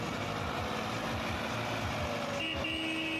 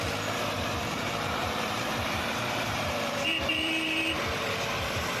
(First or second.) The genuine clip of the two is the first